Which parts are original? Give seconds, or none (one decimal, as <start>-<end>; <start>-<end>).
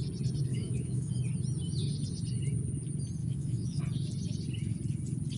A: 0.0-0.5; 1.1-3.2; 3.8-5.4